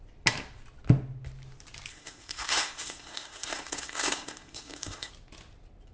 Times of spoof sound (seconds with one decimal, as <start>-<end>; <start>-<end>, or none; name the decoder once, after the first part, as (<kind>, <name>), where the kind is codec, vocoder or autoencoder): 1.9-5.1 (codec, SNAC)